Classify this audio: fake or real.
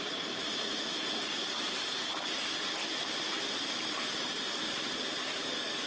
real